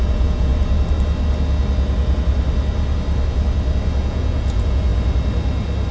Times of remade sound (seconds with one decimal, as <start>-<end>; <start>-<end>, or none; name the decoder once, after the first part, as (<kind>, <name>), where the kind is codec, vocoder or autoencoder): 0.0-0.5 (vocoder, Vocos); 4.0-4.9